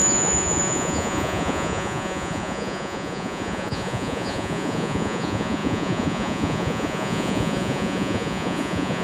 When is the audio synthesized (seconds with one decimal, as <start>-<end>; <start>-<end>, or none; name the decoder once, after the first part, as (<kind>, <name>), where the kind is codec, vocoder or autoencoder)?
0.0-9.0 (vocoder, Vocos)